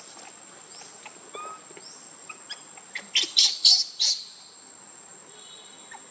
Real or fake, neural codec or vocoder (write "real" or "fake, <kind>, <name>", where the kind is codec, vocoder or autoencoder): real